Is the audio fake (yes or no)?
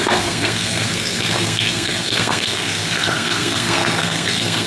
yes